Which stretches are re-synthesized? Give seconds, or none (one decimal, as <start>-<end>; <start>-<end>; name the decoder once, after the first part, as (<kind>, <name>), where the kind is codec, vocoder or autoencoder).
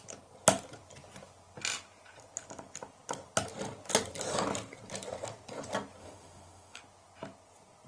6.0-6.8 (autoencoder, DAC-VAE)